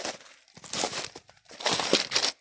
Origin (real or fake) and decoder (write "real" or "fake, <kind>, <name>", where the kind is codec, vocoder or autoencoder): real